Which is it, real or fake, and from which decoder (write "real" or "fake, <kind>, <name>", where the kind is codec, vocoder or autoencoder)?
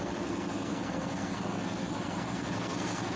fake, codec, SNAC